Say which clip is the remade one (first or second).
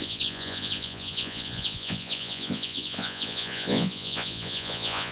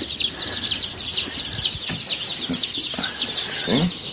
first